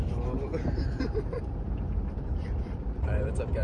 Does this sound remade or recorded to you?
remade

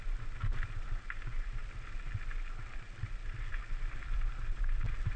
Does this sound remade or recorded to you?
recorded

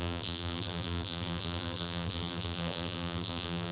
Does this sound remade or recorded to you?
remade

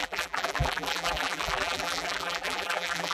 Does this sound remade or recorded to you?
remade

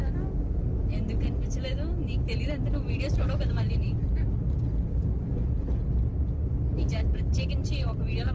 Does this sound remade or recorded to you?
recorded